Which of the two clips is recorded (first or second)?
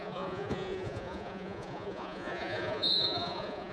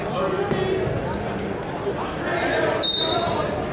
second